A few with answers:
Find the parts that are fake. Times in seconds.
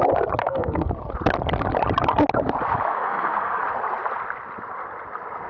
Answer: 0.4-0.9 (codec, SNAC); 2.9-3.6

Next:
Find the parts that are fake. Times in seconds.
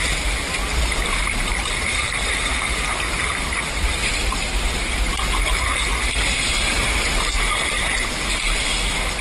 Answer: 1.1-5.1 (vocoder, BigVGAN v2)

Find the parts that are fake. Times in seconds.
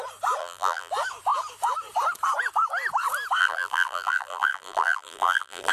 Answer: 0.4-0.9 (vocoder, BigVGAN v2); 3.4-5.7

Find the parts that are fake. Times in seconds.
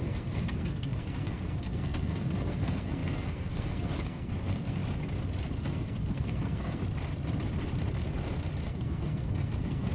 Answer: 0.0-4.8 (codec, SNAC); 5.6-6.8; 8.6-9.9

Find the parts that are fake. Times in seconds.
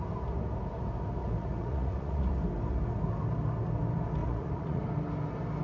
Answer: 1.2-2.3 (vocoder, Vocos); 4.2-4.8